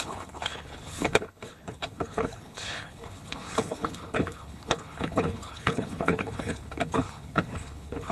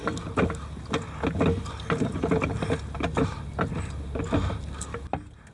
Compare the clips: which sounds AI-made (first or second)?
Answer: first